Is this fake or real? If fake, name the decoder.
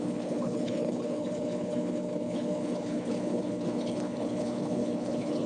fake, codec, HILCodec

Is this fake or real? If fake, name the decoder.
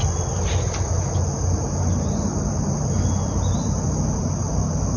real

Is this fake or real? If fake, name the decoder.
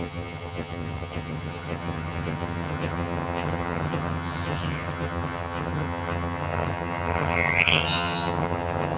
fake, vocoder, HiFi-GAN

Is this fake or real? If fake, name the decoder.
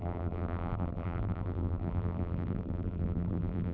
fake, vocoder, BigVGAN v2